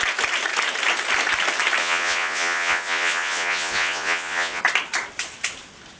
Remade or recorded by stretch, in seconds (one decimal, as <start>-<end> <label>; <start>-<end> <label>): 0.0-1.8 recorded; 1.8-4.6 remade; 4.6-6.0 recorded